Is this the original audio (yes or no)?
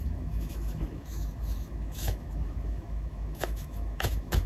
no